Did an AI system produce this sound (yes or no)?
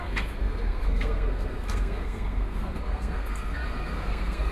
yes